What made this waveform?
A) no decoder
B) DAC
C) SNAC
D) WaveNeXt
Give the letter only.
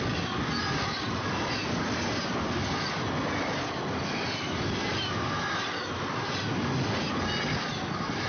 A